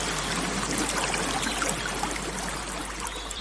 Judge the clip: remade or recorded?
recorded